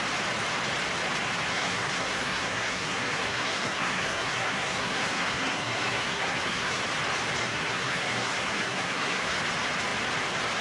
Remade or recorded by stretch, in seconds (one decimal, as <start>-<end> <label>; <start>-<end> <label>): 0.0-1.5 recorded; 1.5-6.8 remade; 6.8-7.4 recorded; 7.4-9.4 remade; 9.4-10.6 recorded